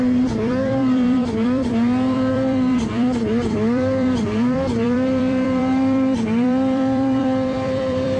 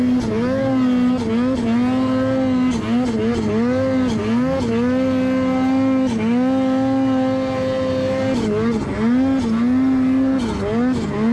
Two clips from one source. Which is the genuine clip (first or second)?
second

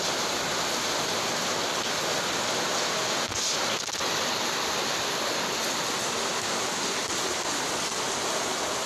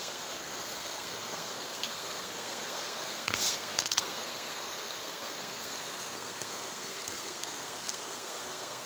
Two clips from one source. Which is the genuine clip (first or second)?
first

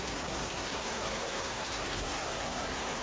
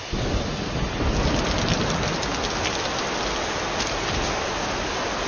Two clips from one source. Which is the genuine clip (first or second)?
second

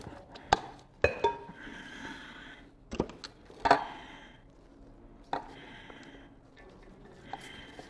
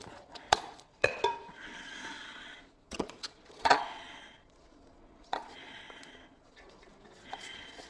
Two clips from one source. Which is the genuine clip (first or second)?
first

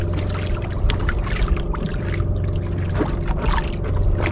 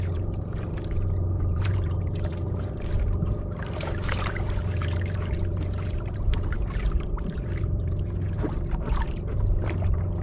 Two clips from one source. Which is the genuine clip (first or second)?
first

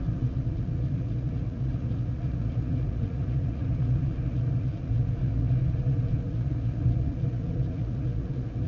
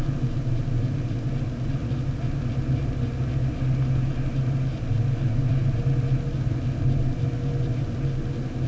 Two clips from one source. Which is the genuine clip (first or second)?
second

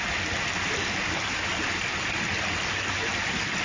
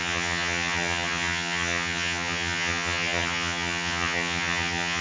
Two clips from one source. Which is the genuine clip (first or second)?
first